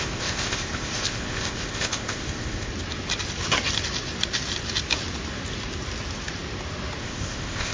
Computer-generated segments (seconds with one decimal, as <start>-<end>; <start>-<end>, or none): 0.0-2.7; 7.0-7.7